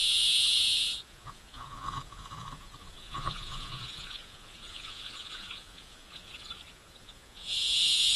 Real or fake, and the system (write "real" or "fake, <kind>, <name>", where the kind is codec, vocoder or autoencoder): fake, vocoder, Vocos